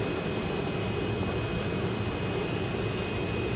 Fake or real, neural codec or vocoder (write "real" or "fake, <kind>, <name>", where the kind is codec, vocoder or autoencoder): real